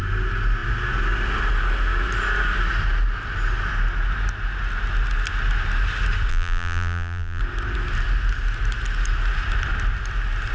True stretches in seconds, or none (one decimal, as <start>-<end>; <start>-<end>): 0.0-6.3; 7.4-10.5